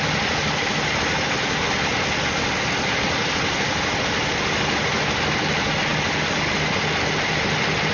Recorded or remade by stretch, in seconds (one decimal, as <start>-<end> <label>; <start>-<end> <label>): 0.0-7.9 recorded